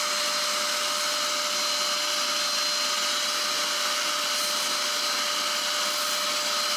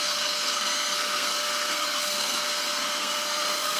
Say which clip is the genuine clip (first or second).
first